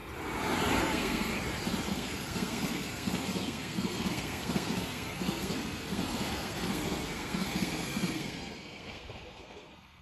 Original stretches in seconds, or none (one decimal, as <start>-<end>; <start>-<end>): 0.0-0.8; 1.3-1.9